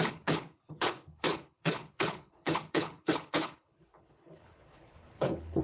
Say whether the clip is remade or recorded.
remade